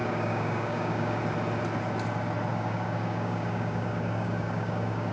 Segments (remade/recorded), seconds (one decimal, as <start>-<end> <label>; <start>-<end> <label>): 0.0-1.2 remade; 1.2-2.5 recorded; 2.5-5.1 remade